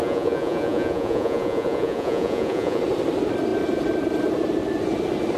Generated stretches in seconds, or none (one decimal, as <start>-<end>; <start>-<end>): 0.0-2.8